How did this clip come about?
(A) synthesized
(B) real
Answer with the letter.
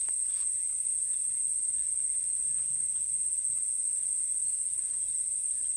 B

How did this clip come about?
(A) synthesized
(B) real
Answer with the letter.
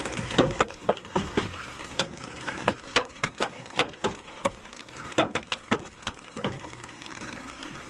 A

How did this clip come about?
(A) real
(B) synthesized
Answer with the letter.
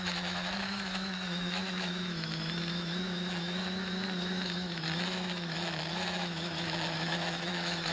B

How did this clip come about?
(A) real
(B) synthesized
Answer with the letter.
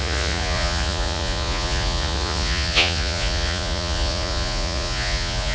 B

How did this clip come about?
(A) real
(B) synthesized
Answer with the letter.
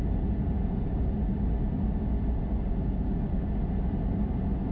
A